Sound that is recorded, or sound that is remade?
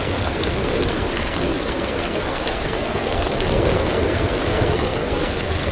remade